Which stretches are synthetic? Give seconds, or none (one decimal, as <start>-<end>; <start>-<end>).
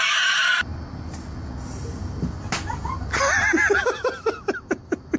none